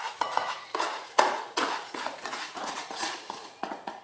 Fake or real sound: fake